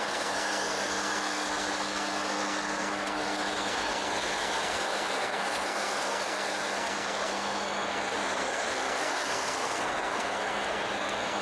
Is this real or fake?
fake